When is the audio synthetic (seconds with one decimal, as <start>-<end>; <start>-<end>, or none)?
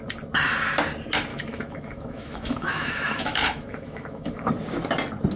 1.3-4.5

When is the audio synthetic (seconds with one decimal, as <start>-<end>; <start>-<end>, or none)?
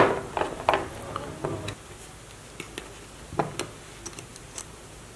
4.3-5.2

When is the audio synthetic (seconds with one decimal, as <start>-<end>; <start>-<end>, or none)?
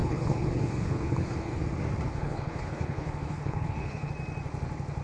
0.0-1.6; 2.1-4.1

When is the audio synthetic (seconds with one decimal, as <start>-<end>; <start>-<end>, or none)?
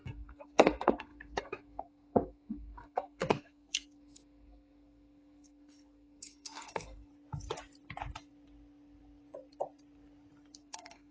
0.0-7.1; 10.6-11.1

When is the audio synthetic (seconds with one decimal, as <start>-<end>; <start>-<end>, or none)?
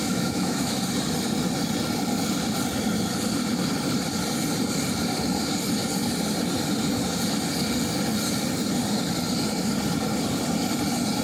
0.0-0.8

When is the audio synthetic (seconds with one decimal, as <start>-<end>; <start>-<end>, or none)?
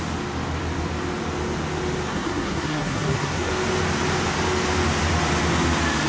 2.1-3.5